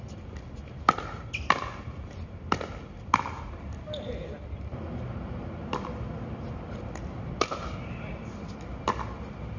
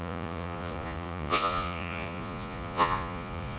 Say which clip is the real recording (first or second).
first